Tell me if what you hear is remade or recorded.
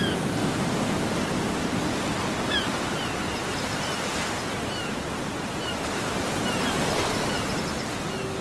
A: recorded